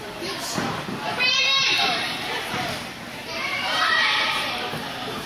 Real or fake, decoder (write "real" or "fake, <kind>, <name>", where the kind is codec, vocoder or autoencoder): fake, vocoder, BigVGAN v2